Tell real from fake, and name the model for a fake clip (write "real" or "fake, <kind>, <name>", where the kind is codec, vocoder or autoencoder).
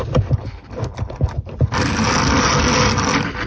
real